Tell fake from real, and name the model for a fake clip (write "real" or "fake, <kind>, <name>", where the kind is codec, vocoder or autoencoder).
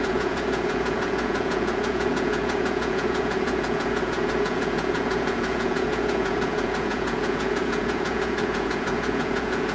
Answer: fake, vocoder, Vocos